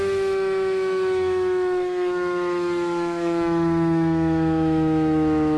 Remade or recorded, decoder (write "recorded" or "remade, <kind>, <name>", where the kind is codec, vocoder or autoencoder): remade, autoencoder, DAC-VAE